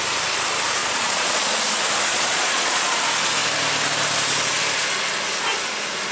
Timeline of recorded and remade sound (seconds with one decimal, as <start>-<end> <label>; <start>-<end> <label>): 0.0-0.8 recorded; 0.8-1.6 remade; 1.6-2.1 recorded; 2.1-2.9 remade; 2.9-6.1 recorded